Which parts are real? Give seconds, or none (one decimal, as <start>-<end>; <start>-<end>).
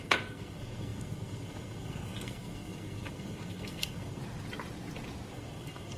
4.2-5.3